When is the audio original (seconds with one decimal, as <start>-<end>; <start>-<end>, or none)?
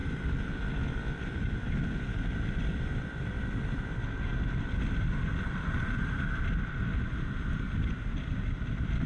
1.2-9.1